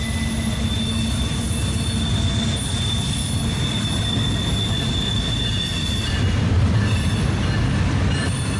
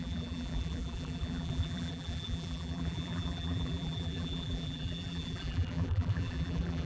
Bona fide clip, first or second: first